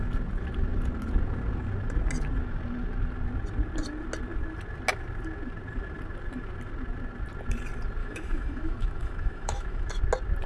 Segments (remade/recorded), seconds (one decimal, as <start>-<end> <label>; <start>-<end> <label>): 0.0-8.0 recorded; 8.0-10.0 remade; 10.0-10.5 recorded